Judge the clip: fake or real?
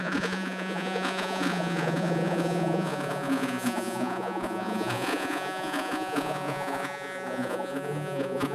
fake